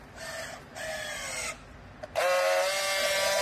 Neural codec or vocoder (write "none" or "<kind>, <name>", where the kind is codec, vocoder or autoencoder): none